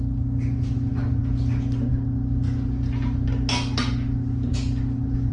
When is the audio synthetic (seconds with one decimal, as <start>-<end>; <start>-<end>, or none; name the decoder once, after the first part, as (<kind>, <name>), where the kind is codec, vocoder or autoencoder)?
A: none